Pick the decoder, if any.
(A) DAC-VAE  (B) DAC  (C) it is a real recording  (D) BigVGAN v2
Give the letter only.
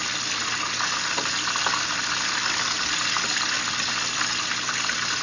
C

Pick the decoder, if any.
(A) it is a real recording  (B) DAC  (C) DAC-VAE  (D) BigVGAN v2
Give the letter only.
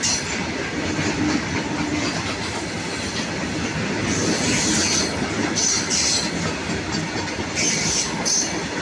A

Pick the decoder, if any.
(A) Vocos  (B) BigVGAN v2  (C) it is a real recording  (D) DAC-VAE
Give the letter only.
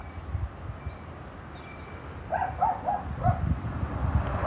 C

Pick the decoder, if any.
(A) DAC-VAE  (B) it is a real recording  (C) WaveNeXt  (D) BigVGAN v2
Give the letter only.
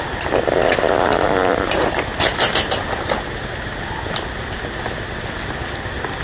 B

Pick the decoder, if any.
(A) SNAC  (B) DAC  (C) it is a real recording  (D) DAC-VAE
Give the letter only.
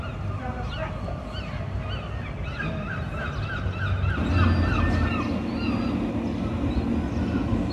C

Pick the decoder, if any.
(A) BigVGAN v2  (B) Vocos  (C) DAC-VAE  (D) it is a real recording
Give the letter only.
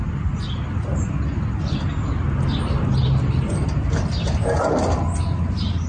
D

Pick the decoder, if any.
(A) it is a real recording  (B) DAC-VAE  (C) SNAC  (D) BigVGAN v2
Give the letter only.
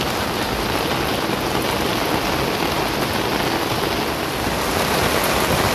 A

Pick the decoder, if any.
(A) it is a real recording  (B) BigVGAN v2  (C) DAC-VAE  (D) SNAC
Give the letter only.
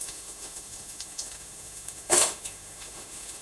C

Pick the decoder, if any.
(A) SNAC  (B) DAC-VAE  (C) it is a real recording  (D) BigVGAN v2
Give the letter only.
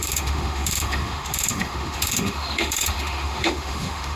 B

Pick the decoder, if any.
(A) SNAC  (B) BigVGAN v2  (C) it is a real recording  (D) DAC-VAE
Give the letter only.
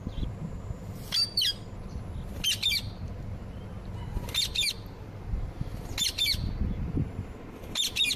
C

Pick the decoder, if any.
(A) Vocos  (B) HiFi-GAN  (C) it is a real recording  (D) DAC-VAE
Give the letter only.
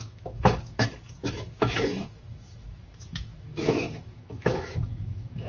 D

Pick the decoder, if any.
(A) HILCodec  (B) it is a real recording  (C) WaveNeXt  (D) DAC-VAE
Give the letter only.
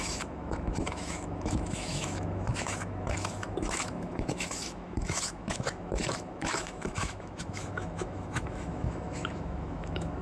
D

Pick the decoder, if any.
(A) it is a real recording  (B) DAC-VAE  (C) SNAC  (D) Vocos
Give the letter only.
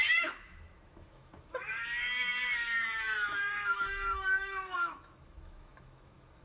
B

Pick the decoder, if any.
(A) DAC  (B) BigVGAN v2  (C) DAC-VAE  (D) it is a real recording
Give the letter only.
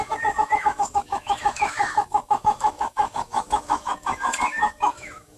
C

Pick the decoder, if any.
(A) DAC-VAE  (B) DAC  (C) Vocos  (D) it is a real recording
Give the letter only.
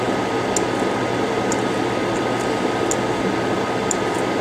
D